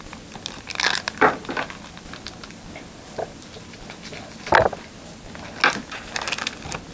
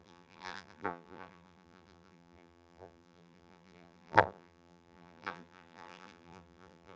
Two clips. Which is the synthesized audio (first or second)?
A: second